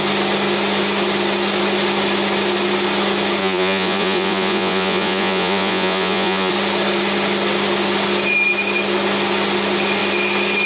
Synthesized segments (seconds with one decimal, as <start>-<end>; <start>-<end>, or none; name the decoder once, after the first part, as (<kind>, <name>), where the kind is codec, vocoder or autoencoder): 3.4-6.5 (vocoder, Vocos)